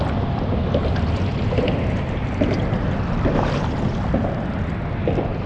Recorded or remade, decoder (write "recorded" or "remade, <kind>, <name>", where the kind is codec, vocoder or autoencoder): recorded